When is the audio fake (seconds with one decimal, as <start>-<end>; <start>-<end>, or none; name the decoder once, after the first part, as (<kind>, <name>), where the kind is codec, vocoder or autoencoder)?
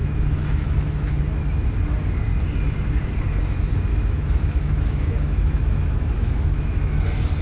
0.0-1.2 (autoencoder, DAC-VAE); 3.9-7.0